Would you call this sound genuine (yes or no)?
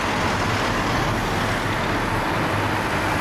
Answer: yes